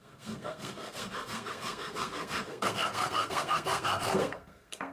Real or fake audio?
fake